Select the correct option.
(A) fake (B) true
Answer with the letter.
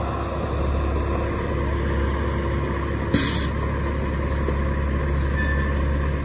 B